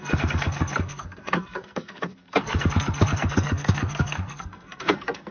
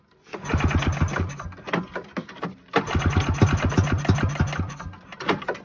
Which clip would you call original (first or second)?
second